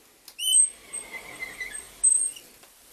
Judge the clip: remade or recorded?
recorded